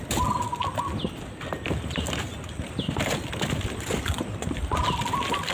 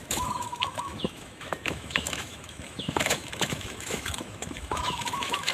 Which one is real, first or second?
first